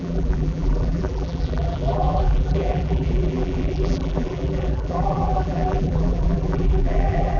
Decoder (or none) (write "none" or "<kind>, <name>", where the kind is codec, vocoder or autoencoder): vocoder, BigVGAN v2